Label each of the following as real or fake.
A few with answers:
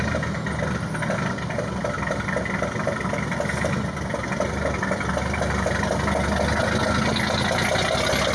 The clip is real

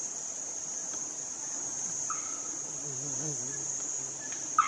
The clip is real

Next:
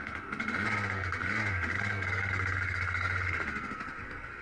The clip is fake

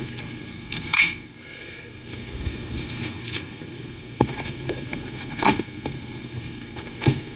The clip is fake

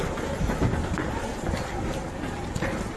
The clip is real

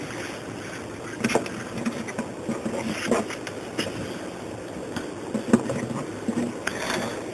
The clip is real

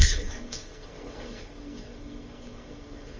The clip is fake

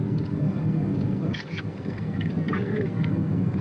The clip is fake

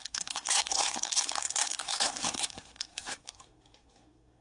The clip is fake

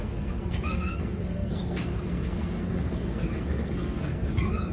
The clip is fake